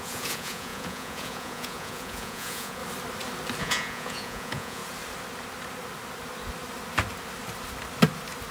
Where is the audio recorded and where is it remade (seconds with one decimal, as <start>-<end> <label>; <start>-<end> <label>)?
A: 0.0-2.8 remade; 2.8-3.6 recorded; 3.6-4.8 remade; 4.8-8.5 recorded